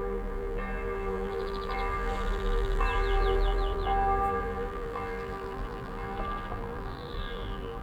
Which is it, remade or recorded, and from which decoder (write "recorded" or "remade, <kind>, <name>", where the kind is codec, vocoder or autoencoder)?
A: remade, vocoder, BigVGAN v2